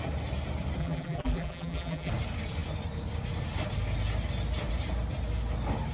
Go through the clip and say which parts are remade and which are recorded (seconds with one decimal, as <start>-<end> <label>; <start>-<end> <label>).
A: 0.0-0.8 recorded; 0.8-2.1 remade; 2.1-5.9 recorded